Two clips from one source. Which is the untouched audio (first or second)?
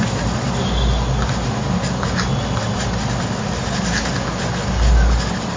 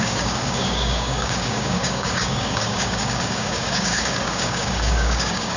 first